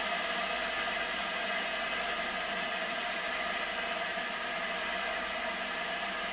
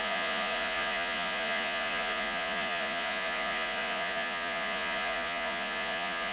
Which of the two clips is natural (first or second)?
first